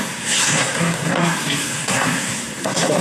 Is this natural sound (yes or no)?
no